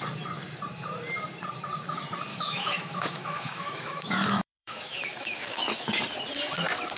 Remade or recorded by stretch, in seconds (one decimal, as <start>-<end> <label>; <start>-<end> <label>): 0.0-2.3 recorded; 2.3-6.0 remade; 6.0-7.0 recorded